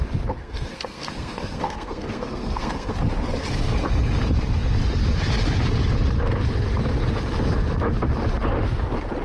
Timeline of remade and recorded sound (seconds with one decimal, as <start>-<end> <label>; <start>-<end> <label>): 0.0-0.4 recorded; 0.4-3.0 remade; 3.0-9.2 recorded